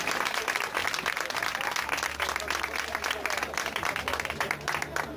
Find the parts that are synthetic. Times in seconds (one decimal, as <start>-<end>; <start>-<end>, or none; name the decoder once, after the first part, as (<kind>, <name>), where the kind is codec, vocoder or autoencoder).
none